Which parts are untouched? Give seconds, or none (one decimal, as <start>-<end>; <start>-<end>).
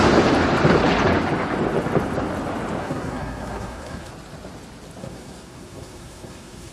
0.0-2.8; 4.1-5.0